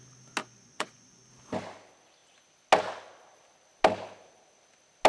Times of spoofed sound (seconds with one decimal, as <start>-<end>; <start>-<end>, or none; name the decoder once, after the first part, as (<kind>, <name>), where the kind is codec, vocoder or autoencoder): 0.4-1.3 (vocoder, Vocos)